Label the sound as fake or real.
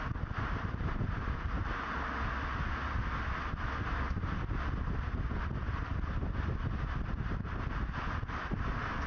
real